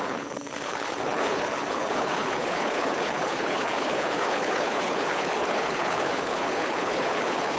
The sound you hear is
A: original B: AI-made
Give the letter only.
B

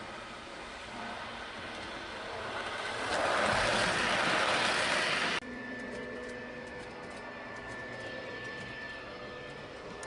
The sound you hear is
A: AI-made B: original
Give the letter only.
B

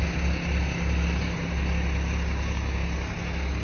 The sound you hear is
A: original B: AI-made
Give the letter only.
A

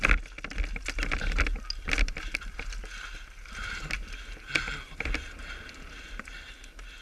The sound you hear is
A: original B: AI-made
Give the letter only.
A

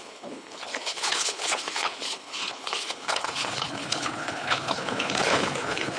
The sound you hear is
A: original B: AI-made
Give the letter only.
B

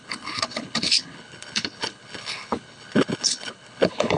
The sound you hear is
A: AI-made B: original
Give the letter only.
A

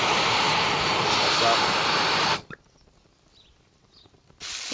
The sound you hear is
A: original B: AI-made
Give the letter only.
A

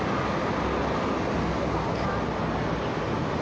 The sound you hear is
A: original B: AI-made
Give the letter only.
A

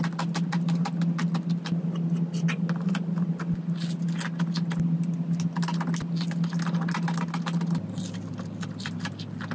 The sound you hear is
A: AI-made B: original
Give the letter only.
B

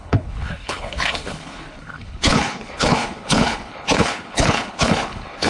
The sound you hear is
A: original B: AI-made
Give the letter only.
B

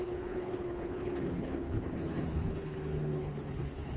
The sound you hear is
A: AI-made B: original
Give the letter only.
A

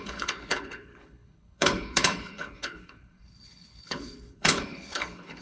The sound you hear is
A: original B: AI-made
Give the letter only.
B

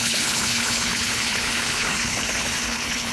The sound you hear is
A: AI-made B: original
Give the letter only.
A